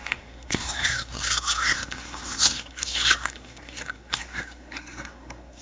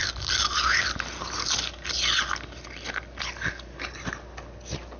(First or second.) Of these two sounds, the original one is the second